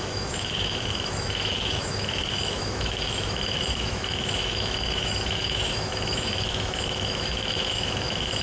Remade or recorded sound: remade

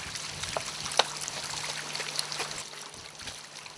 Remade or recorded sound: recorded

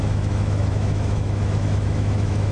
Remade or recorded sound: remade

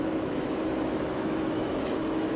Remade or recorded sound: remade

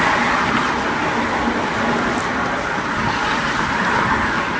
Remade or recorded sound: recorded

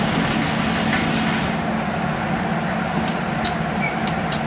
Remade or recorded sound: recorded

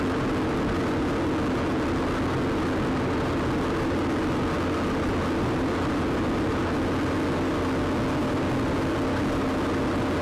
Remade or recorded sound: recorded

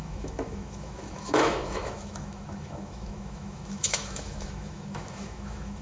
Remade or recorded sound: remade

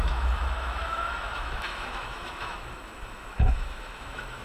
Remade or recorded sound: remade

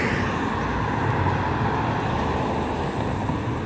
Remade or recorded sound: recorded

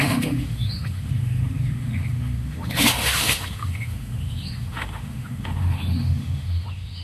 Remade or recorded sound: remade